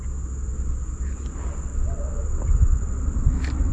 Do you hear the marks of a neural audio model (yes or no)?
no